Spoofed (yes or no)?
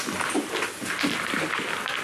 no